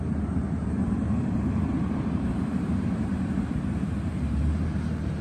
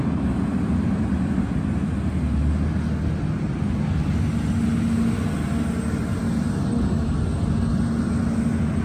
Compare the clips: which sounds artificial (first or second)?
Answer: first